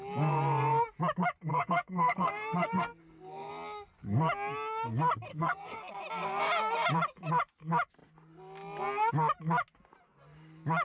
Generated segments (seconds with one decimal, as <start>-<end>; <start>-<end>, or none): 1.5-3.5; 5.3-5.9